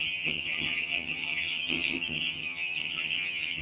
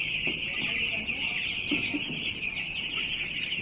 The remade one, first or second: first